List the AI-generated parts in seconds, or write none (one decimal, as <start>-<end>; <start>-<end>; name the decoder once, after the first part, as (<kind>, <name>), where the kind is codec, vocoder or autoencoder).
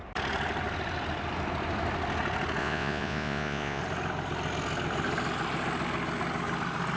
2.6-3.8 (vocoder, Vocos)